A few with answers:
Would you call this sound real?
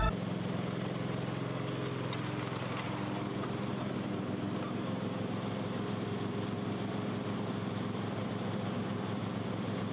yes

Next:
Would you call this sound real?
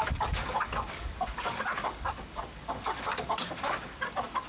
no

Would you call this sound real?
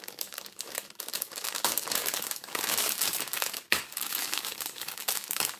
no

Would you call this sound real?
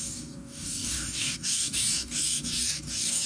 no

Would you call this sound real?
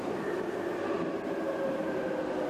yes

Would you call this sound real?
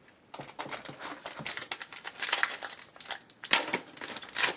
yes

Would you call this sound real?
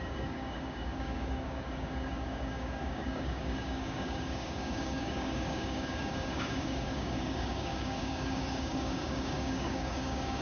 no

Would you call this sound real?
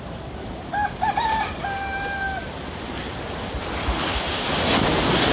yes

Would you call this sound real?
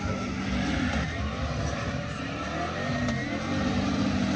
yes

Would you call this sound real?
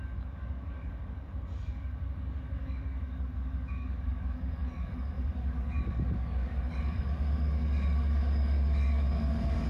no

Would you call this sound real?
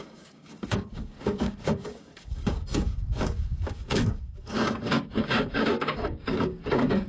no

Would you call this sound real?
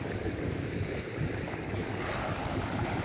no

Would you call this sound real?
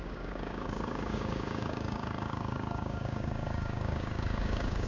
no